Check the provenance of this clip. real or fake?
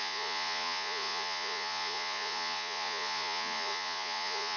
fake